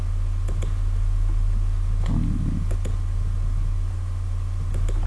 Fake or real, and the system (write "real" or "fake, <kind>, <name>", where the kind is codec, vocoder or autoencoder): real